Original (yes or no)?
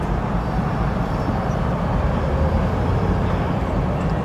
no